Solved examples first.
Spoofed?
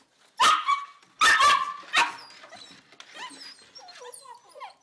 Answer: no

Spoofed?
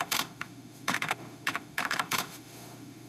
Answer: yes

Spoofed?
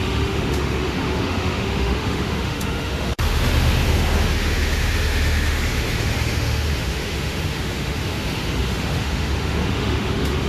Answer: yes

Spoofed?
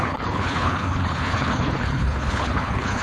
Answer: yes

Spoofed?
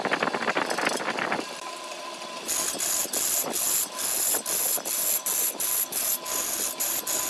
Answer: no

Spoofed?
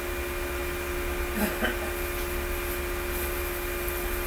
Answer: no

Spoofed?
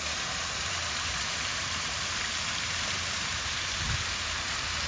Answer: yes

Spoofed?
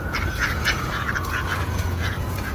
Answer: yes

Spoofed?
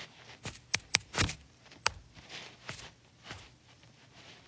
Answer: no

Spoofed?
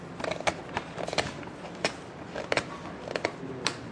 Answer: no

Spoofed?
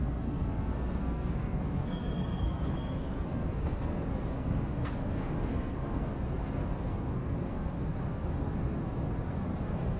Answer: yes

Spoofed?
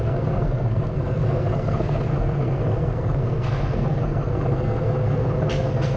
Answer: yes